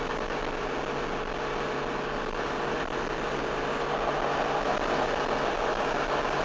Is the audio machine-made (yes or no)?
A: no